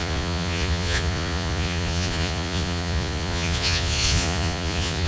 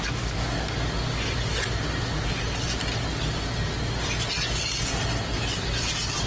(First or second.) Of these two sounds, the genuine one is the second